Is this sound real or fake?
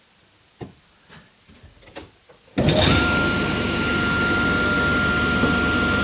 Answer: real